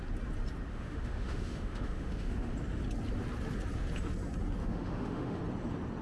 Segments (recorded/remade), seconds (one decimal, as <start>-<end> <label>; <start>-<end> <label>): 0.0-0.7 recorded; 0.7-2.5 remade; 2.5-4.6 recorded; 4.6-5.4 remade; 5.4-6.0 recorded